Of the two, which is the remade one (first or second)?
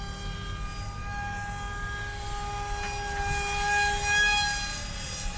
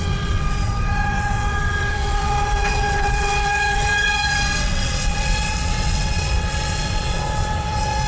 second